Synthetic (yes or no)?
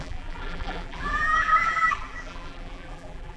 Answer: yes